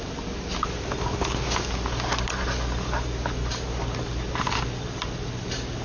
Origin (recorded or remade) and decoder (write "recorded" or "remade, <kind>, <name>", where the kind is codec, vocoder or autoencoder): recorded